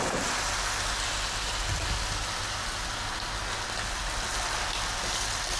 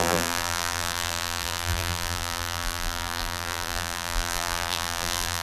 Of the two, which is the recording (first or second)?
first